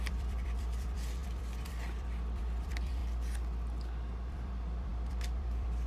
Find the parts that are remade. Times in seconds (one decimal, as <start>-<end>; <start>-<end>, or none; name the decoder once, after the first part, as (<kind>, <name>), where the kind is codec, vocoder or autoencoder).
0.0-3.0 (vocoder, BigVGAN v2); 4.3-5.9